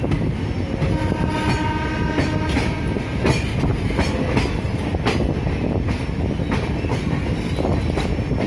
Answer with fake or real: real